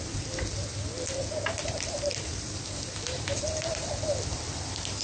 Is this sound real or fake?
real